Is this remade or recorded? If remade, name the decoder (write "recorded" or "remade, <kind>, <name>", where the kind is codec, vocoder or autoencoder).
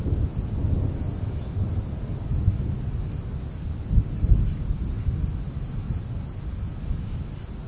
recorded